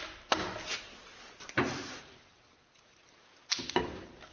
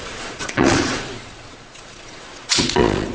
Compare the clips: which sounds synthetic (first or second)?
second